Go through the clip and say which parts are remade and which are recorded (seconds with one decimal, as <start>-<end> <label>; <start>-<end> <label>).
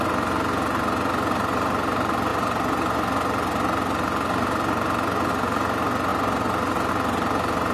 0.0-7.7 recorded